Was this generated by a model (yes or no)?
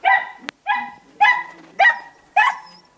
no